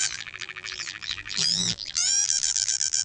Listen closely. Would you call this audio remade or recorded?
remade